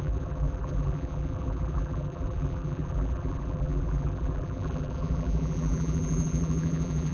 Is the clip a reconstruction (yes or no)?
yes